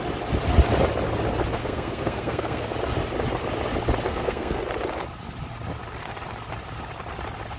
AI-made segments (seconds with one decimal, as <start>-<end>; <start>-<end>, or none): 1.6-2.7; 4.1-4.6